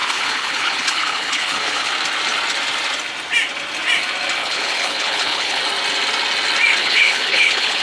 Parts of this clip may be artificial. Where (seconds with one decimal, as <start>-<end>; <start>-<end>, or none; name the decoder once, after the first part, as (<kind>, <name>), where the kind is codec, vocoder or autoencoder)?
0.0-1.9 (codec, HILCodec); 4.4-5.6; 6.8-7.8